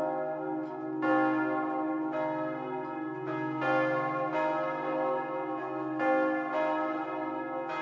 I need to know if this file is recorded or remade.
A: recorded